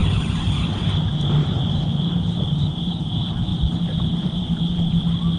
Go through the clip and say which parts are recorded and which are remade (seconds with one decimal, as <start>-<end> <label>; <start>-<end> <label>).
0.0-1.4 recorded; 1.4-3.0 remade; 3.0-3.5 recorded; 3.5-5.0 remade; 5.0-5.4 recorded